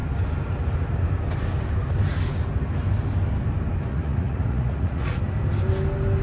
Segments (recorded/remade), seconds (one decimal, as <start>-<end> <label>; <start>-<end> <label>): 0.0-3.9 recorded; 3.9-5.2 remade; 5.2-6.2 recorded